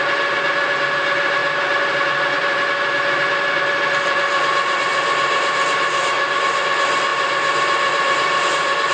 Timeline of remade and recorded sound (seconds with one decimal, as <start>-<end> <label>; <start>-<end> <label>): 0.0-8.9 recorded